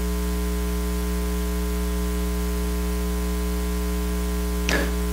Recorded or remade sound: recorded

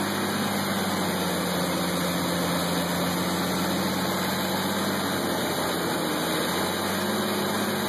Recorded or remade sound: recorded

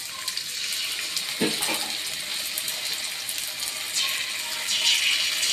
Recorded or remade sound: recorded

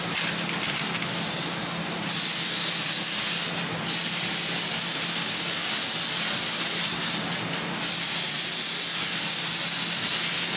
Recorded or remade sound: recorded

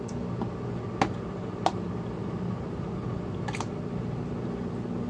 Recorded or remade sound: recorded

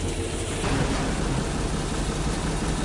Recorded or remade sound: recorded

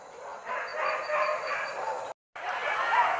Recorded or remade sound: recorded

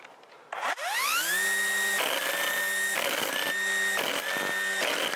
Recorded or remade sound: recorded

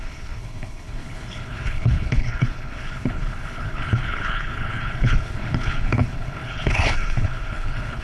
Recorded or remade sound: remade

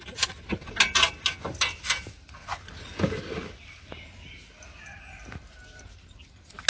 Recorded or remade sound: recorded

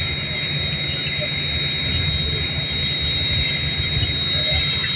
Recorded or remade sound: recorded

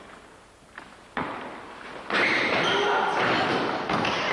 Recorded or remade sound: recorded